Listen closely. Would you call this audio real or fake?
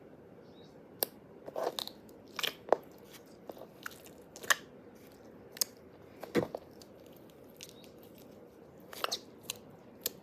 real